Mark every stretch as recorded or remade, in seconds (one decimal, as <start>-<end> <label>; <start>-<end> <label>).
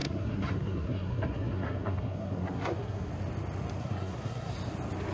0.0-3.1 remade; 3.1-3.8 recorded; 3.8-4.5 remade; 4.5-5.1 recorded